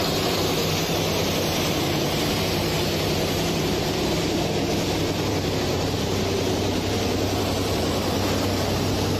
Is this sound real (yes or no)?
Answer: no